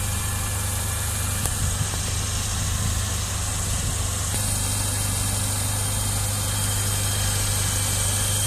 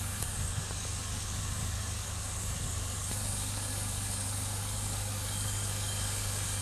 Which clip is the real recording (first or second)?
first